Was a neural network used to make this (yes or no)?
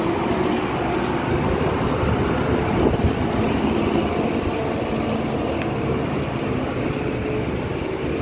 no